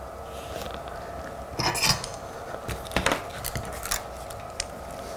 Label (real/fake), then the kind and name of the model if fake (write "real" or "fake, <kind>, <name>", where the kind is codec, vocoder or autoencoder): real